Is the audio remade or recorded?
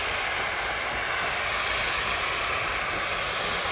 recorded